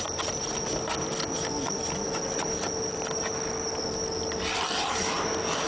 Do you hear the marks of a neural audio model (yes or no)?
no